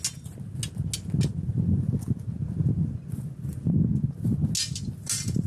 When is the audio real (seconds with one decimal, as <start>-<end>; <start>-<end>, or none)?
0.0-5.5

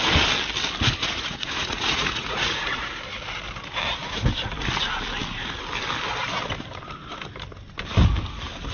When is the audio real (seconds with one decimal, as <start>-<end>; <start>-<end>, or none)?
0.0-1.0; 3.0-8.7

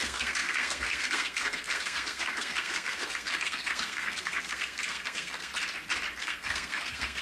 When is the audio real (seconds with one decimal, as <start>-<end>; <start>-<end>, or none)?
5.5-6.2